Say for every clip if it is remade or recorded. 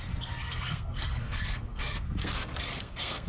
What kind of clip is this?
remade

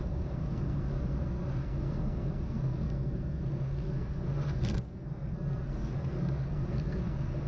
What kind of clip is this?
remade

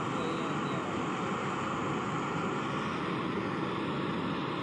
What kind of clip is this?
recorded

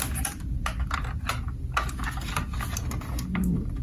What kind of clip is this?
recorded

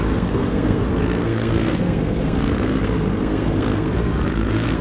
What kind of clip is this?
remade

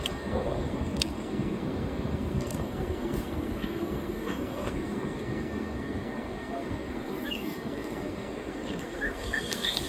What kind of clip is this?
remade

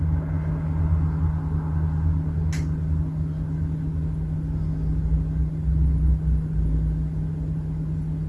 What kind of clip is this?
recorded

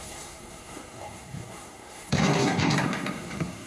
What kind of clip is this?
remade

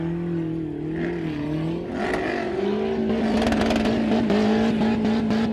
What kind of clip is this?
recorded